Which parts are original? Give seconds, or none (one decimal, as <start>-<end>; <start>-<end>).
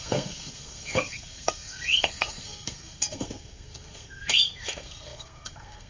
none